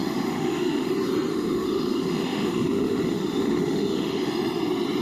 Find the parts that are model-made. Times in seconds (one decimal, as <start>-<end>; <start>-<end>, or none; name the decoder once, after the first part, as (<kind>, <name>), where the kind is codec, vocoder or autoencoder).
0.0-0.9 (autoencoder, DAC-VAE); 1.3-4.3